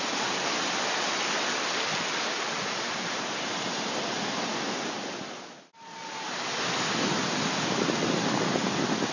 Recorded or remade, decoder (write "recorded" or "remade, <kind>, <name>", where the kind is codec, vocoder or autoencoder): recorded